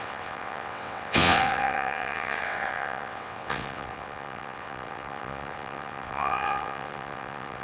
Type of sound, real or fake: fake